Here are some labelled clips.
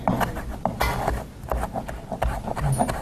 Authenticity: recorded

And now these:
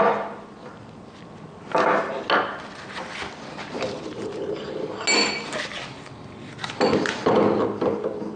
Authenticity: recorded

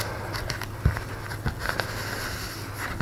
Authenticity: recorded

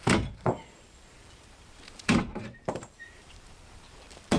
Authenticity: remade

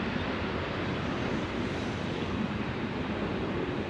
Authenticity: recorded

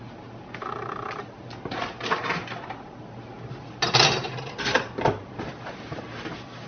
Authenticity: recorded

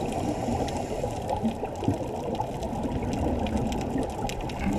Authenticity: recorded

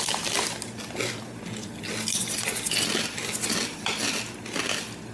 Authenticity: recorded